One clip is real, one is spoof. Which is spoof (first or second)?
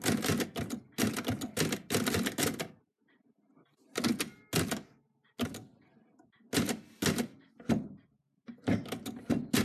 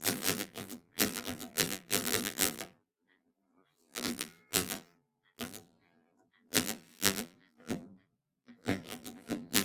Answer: second